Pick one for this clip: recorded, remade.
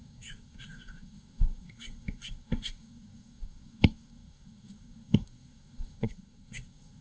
remade